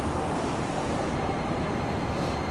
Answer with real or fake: fake